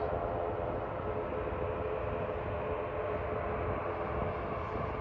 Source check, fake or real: real